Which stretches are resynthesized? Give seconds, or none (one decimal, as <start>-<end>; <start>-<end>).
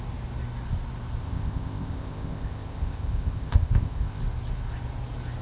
1.2-4.2